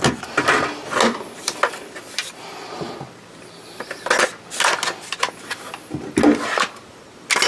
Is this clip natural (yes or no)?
yes